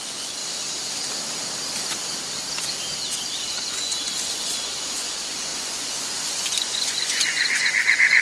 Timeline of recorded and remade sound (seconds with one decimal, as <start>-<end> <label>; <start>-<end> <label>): 0.0-0.4 remade; 0.4-3.5 recorded; 3.5-8.2 remade